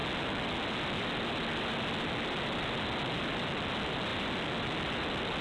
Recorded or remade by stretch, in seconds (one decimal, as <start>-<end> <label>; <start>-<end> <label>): 0.0-5.4 recorded